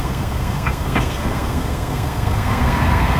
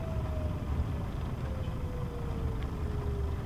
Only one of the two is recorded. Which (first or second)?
second